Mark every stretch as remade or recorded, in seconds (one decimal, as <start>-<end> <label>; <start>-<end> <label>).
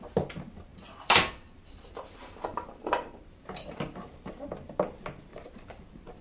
0.0-0.7 recorded; 0.7-4.3 remade; 4.3-5.3 recorded; 5.3-6.2 remade